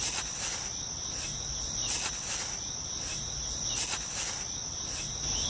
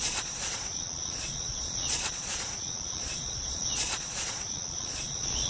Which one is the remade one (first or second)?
second